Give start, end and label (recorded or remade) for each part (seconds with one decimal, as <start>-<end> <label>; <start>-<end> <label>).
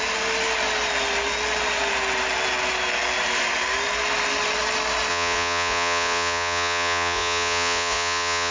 0.0-5.1 recorded; 5.1-8.5 remade